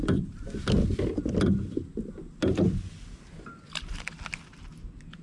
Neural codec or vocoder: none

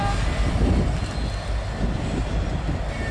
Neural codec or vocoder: none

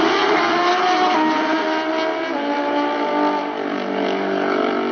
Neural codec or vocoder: none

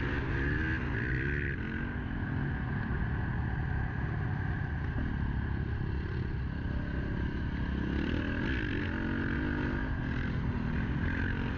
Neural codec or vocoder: none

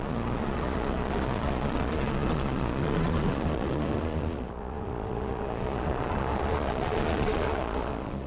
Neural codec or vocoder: vocoder, Vocos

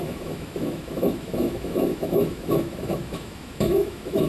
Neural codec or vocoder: autoencoder, DAC-VAE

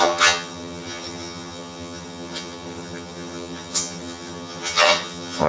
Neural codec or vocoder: vocoder, HiFi-GAN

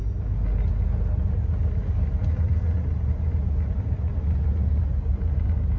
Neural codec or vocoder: none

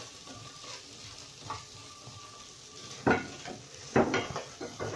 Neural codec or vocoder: none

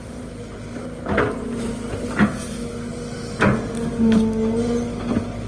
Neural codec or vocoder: none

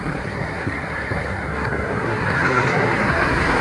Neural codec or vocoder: codec, SNAC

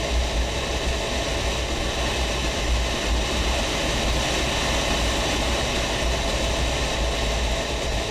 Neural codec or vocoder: none